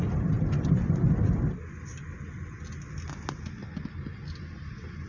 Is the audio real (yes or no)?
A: yes